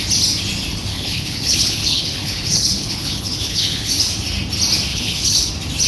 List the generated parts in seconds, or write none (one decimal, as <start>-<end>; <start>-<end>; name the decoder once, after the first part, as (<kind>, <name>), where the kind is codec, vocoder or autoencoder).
0.9-3.9 (codec, HILCodec); 4.9-5.5